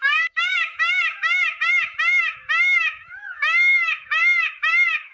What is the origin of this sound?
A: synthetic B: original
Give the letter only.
A